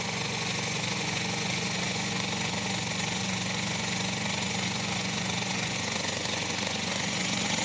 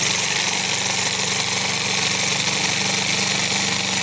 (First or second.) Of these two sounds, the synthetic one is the first